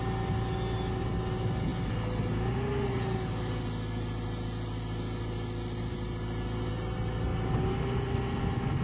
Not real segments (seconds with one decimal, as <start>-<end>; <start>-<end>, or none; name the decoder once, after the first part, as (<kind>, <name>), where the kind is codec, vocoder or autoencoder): none